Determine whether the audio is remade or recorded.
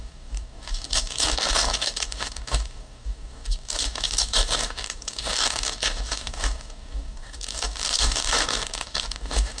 remade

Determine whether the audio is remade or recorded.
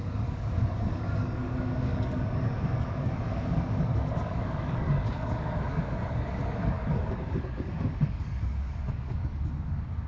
remade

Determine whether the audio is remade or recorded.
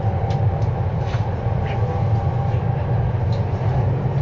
recorded